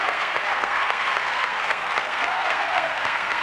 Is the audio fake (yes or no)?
yes